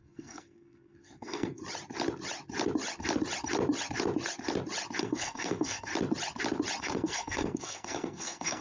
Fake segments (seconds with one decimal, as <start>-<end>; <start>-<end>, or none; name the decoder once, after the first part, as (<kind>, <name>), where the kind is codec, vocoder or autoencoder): 0.0-1.6 (codec, SNAC); 5.0-5.9; 6.8-8.6